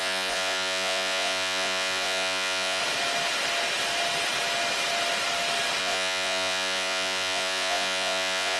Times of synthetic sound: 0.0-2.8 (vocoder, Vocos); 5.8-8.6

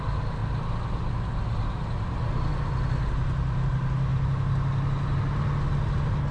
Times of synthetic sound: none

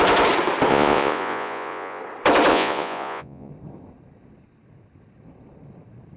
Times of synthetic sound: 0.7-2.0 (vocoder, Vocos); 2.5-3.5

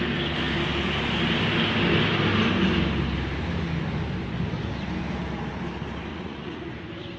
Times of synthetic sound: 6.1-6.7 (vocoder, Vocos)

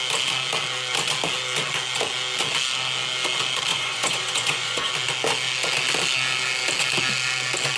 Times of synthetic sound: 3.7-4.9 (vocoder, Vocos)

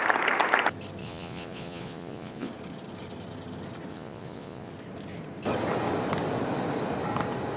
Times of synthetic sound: 1.0-2.5 (vocoder, Vocos); 3.9-4.7

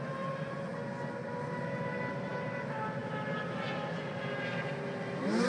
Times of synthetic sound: none

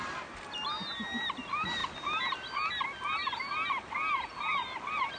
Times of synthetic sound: none